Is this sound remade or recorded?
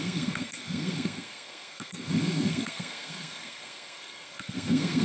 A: remade